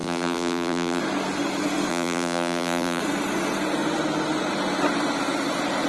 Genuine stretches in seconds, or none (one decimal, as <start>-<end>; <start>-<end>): 1.0-1.9; 3.0-5.9